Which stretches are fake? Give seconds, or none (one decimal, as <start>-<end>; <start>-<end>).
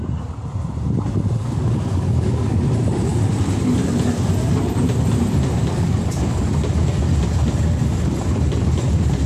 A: 1.4-2.6; 5.6-6.5